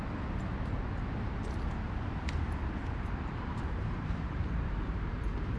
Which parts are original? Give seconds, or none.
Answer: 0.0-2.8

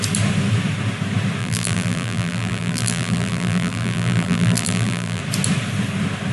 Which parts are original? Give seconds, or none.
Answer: 0.0-1.4; 5.2-6.3

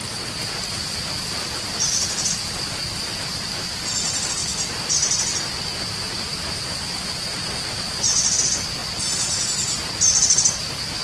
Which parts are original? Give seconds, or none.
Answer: 0.0-3.3; 4.0-11.0

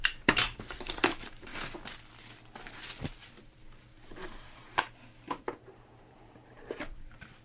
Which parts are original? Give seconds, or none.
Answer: 1.5-3.0

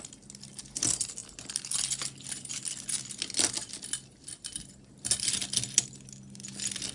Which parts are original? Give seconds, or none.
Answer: 0.0-6.9

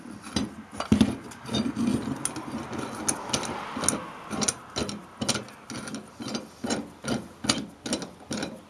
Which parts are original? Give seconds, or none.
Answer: 0.0-8.7

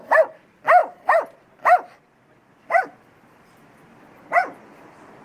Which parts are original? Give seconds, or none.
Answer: 0.0-5.2

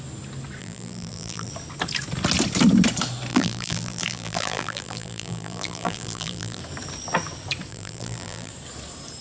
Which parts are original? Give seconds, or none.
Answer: 0.0-0.6; 1.5-3.3; 6.6-7.7; 8.5-9.2